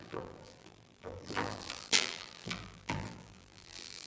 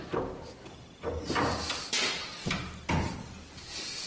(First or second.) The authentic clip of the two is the second